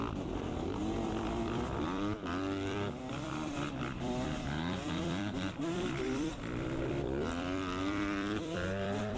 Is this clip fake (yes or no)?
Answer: yes